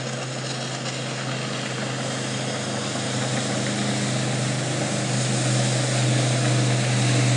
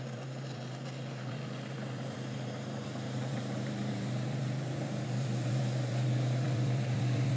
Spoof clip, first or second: second